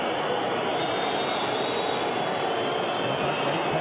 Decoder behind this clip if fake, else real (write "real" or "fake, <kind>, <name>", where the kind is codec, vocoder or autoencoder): real